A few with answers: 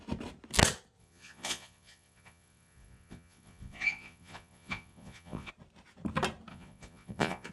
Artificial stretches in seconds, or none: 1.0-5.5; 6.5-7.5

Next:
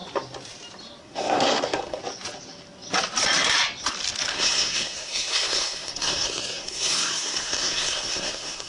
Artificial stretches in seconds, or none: 1.0-2.0; 4.3-8.7

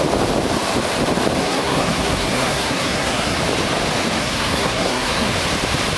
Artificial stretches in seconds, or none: 1.4-3.4; 4.2-5.3

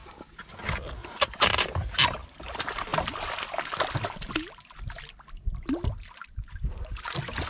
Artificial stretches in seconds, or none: 0.0-0.5; 1.0-1.9

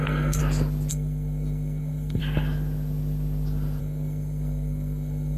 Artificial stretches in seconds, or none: 0.0-0.4; 0.9-2.2; 3.8-5.4

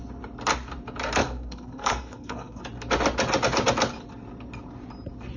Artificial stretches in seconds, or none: 1.2-2.6

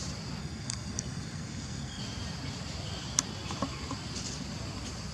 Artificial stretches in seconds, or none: 0.4-2.0